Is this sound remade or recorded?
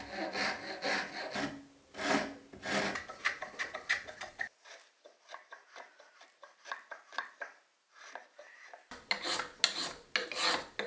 recorded